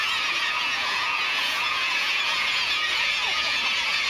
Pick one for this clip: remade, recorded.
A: remade